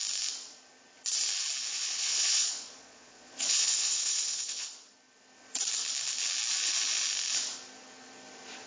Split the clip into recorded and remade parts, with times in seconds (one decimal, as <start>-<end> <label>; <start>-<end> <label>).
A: 0.0-1.7 recorded; 1.7-4.9 remade; 4.9-8.7 recorded